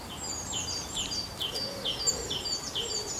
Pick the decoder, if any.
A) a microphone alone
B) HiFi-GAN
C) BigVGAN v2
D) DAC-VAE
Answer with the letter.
C